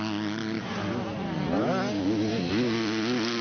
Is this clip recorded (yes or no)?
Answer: yes